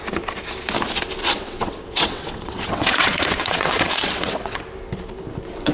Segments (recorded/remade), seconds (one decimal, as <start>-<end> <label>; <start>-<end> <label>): 0.0-1.2 recorded; 1.2-4.6 remade; 4.6-5.7 recorded